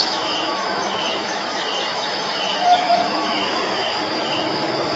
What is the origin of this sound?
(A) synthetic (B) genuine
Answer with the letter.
A